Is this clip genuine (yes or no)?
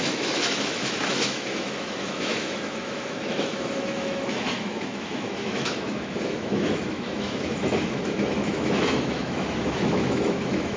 no